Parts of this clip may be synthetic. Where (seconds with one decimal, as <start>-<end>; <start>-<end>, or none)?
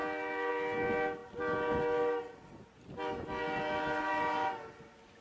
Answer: none